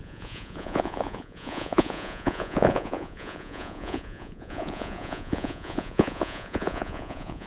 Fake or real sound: fake